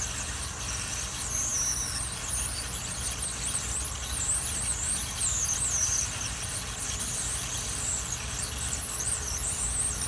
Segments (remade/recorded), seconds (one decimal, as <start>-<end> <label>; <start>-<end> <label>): 0.0-10.1 recorded